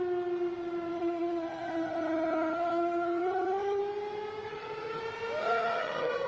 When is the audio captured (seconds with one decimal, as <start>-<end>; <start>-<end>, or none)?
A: 0.0-0.9; 3.8-4.5; 5.0-5.4